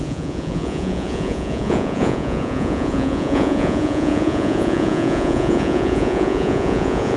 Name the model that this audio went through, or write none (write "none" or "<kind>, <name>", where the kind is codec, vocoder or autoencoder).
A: vocoder, Vocos